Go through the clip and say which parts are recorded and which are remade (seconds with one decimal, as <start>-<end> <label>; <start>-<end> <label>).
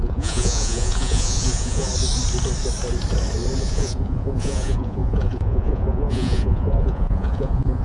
0.0-1.9 remade; 1.9-3.6 recorded; 3.6-7.8 remade